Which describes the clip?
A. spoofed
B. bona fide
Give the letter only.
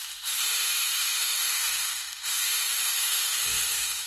A